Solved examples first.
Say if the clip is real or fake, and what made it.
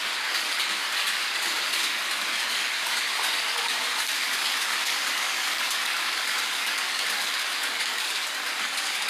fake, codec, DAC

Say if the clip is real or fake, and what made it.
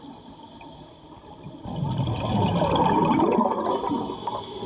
real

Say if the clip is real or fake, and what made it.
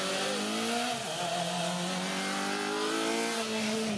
real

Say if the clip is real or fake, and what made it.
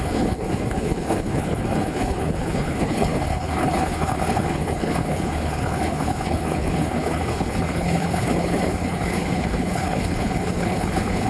fake, codec, HILCodec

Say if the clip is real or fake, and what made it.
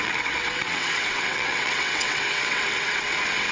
fake, vocoder, WaveNeXt